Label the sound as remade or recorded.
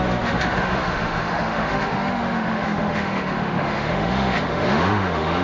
remade